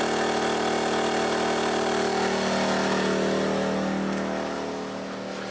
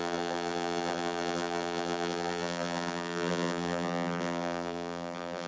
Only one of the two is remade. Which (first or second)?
second